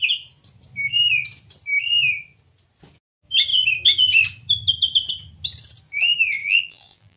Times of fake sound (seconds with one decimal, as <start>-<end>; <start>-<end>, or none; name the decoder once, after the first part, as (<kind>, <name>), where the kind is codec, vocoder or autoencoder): 6.4-7.2 (vocoder, BigVGAN v2)